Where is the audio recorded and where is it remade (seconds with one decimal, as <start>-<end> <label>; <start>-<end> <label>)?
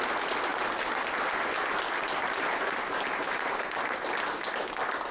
0.0-5.1 recorded